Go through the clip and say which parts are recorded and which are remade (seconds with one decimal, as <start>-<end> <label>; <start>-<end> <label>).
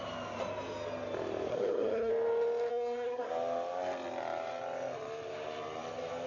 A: 0.0-1.5 recorded; 1.5-2.1 remade; 2.1-2.7 recorded; 2.7-3.3 remade; 3.3-6.3 recorded